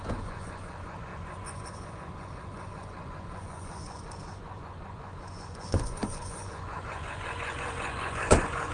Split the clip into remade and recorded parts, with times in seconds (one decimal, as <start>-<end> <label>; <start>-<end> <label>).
0.0-8.7 remade